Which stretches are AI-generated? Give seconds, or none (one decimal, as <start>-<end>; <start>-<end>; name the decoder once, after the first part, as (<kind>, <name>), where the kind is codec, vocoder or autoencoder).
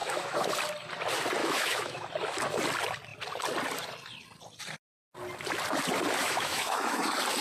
0.0-0.5 (autoencoder, DAC-VAE); 1.4-2.1; 6.2-7.0